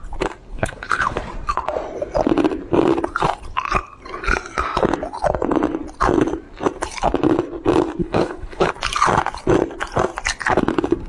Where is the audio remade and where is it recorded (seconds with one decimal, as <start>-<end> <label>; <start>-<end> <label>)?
0.0-0.5 recorded; 0.5-1.2 remade; 1.2-8.0 recorded; 8.0-8.7 remade; 8.7-11.1 recorded